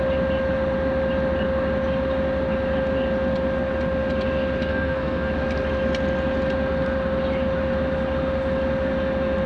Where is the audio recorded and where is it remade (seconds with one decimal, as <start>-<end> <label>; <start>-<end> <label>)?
0.0-4.7 recorded; 4.7-5.3 remade; 5.3-9.5 recorded